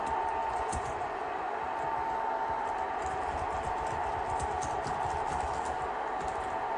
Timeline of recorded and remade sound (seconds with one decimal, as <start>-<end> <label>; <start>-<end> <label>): 0.0-0.4 recorded; 0.4-1.6 remade; 1.6-6.8 recorded